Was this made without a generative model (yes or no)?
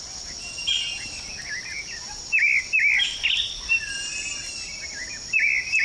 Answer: yes